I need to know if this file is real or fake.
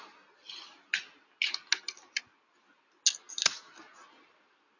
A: real